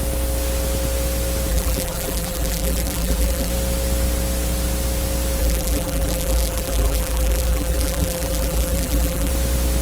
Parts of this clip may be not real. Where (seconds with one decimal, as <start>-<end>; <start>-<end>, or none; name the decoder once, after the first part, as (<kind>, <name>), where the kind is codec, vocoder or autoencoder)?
1.5-3.5 (vocoder, BigVGAN v2); 5.4-9.3